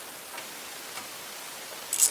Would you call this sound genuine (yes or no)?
yes